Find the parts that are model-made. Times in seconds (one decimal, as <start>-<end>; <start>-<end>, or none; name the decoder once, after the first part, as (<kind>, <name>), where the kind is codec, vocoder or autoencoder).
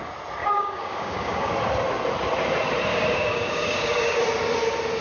0.4-1.5 (codec, DAC); 2.9-4.2